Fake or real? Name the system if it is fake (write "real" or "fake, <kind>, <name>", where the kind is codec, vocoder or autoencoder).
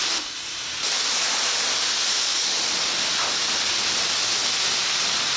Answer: real